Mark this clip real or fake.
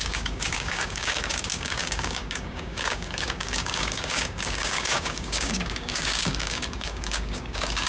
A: fake